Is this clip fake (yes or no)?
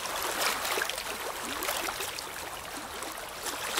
no